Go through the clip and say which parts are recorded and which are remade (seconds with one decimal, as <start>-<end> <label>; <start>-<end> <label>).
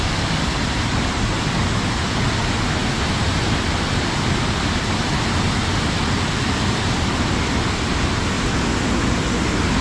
0.0-9.8 recorded